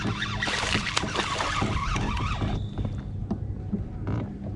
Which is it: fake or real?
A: real